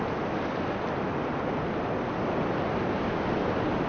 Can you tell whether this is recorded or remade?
recorded